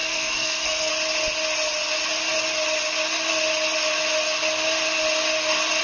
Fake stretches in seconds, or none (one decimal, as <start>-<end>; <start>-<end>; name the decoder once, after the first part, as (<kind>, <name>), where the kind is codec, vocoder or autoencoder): 0.0-0.9 (codec, SNAC)